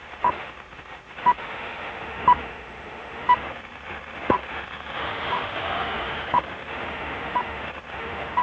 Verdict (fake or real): fake